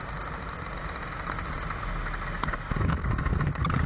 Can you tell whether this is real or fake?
real